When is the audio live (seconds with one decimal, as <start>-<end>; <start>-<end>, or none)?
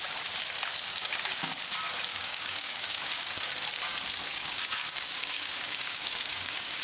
0.0-0.9; 1.6-2.1; 3.5-4.3